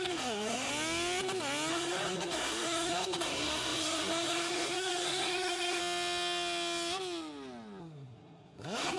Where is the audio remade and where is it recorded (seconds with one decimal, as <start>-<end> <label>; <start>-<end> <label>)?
0.0-0.7 remade; 0.7-1.7 recorded; 1.7-5.8 remade; 5.8-7.8 recorded; 7.8-9.0 remade